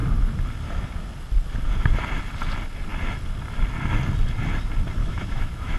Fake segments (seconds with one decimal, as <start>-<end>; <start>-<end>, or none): 5.0-5.8